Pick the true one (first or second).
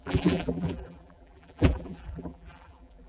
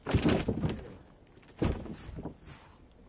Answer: second